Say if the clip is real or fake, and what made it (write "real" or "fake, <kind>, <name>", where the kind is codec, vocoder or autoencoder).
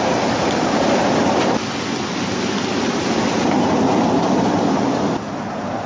real